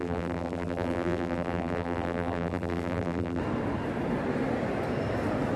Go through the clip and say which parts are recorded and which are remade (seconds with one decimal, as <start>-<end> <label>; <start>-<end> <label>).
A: 0.0-3.4 remade; 3.4-5.6 recorded